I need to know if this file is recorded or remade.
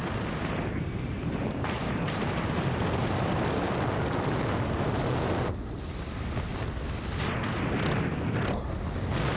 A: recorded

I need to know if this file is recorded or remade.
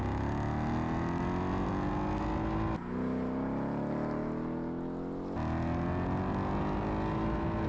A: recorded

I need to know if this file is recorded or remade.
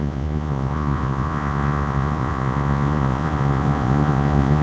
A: remade